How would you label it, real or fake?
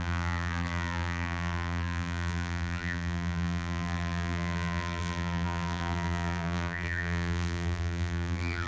fake